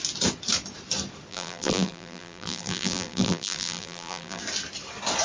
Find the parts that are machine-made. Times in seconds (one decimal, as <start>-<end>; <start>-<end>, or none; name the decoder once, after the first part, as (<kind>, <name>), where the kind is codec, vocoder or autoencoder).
1.3-4.4 (vocoder, BigVGAN v2)

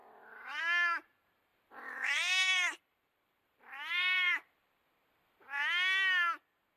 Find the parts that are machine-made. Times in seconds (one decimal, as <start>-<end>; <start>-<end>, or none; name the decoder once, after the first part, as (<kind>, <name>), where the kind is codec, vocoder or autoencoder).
0.0-0.6 (vocoder, BigVGAN v2); 1.5-4.9

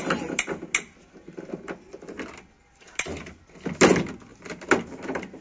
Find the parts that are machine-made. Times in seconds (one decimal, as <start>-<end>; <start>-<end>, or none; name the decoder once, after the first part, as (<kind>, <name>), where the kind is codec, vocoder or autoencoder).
none

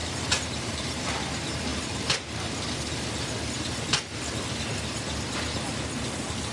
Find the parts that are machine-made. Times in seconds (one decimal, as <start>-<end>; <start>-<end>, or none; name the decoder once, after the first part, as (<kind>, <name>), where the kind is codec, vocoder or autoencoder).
0.0-1.0 (vocoder, BigVGAN v2)